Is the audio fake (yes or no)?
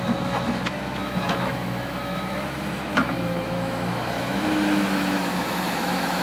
yes